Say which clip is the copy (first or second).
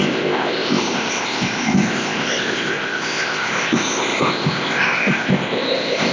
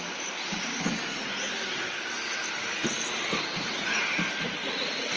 first